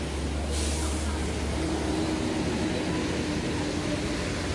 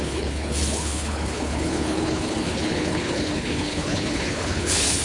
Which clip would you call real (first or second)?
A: first